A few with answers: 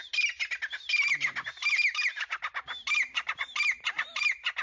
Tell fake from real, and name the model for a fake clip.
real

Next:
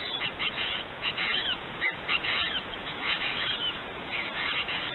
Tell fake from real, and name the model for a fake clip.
fake, vocoder, Vocos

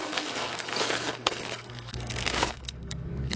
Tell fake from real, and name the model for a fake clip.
fake, codec, SNAC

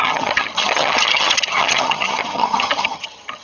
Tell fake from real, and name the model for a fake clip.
fake, vocoder, HiFi-GAN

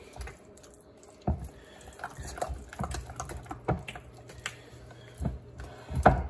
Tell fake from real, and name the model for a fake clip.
real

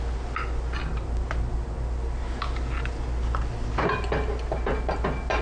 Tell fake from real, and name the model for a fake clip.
real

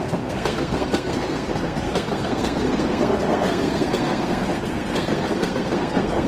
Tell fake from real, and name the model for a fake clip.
fake, codec, SNAC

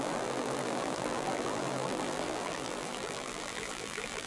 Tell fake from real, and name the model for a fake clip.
fake, vocoder, BigVGAN v2